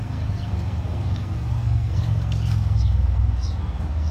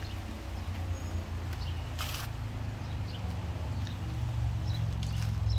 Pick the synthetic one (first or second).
first